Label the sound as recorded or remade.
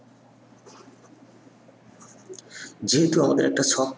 recorded